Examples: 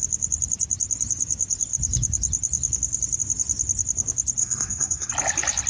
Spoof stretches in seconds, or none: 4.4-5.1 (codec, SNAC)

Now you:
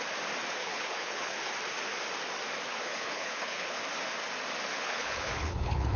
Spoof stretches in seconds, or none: 0.6-1.5 (codec, HILCodec); 2.7-3.8; 4.7-6.0

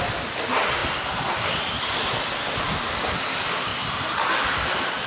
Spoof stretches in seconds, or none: 0.0-0.8 (vocoder, BigVGAN v2); 3.0-3.7; 4.5-5.1

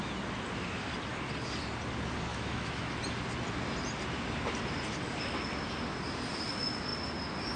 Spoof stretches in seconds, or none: 2.3-3.0 (autoencoder, DAC-VAE)

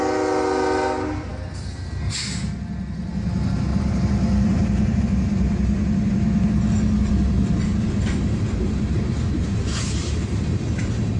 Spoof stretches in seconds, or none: 3.7-5.0 (vocoder, BigVGAN v2); 7.7-11.2